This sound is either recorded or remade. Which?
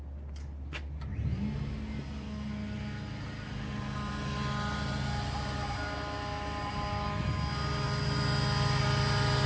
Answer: recorded